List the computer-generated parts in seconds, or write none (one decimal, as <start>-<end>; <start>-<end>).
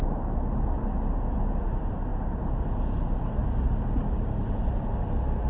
none